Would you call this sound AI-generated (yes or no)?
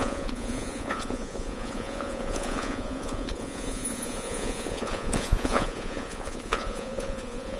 yes